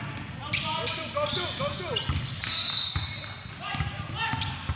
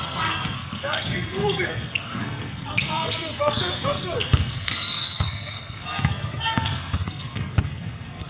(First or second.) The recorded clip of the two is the first